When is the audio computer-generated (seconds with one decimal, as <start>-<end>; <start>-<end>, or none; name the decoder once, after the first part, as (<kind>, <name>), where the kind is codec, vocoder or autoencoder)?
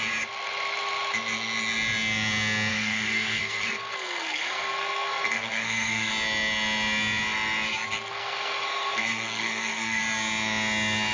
2.7-6.1 (codec, SNAC); 8.1-10.0